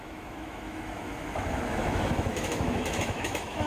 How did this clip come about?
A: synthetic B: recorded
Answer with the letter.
A